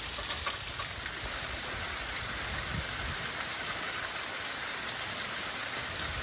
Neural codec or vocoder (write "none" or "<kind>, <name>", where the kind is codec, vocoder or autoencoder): none